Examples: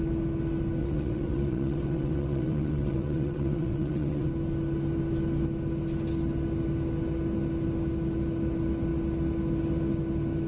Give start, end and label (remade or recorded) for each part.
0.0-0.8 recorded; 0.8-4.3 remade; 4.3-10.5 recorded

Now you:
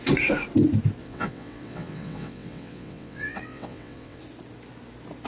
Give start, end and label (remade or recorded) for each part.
0.0-1.0 recorded; 1.0-4.2 remade; 4.2-5.3 recorded

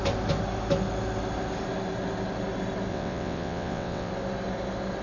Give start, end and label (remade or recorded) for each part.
0.0-2.9 recorded; 2.9-4.1 remade; 4.1-5.0 recorded

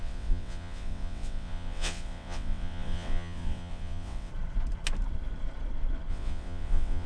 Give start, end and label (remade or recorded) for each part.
0.0-4.3 remade; 4.3-6.1 recorded; 6.1-7.1 remade

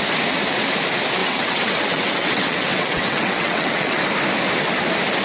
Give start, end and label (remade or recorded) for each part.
0.0-1.2 recorded; 1.2-4.0 remade; 4.0-5.2 recorded

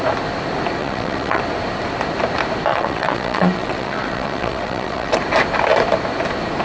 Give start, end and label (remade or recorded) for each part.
0.0-0.8 recorded; 0.8-1.4 remade; 1.4-2.7 recorded; 2.7-5.2 remade; 5.2-6.6 recorded

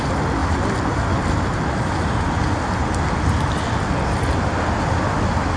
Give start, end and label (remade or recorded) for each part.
0.0-5.6 recorded

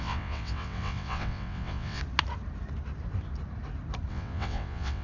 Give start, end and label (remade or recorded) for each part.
0.0-2.0 remade; 2.0-4.1 recorded; 4.1-5.0 remade